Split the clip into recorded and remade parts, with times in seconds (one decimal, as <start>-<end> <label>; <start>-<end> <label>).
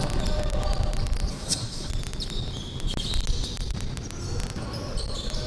0.0-1.3 recorded; 1.3-1.9 remade; 1.9-5.5 recorded